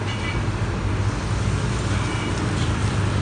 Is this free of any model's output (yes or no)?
yes